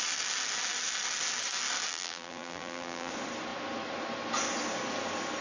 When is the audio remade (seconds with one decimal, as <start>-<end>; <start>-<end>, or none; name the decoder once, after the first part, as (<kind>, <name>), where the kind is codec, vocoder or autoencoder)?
1.9-3.1 (vocoder, BigVGAN v2)